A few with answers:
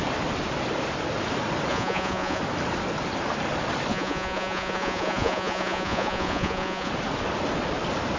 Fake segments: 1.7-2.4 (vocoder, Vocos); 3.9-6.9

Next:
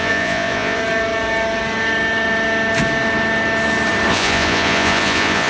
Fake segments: 0.0-0.8 (vocoder, Vocos); 4.1-5.5

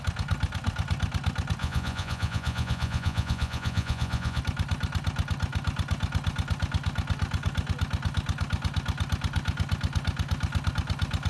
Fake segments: 1.6-4.4 (vocoder, Vocos)

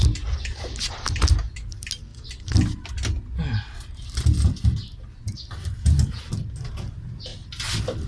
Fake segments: none

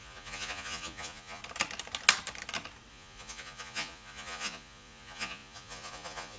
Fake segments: 0.0-1.4 (vocoder, Vocos); 2.9-6.4

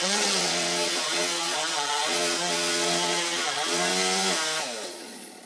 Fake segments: 0.0-3.9 (vocoder, Vocos); 4.9-5.5